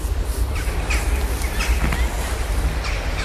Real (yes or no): yes